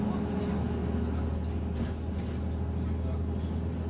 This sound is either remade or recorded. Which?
recorded